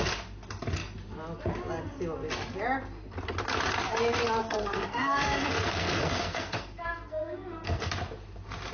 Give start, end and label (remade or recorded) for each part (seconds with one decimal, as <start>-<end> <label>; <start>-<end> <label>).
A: 0.0-4.4 recorded; 4.4-7.9 remade; 7.9-8.7 recorded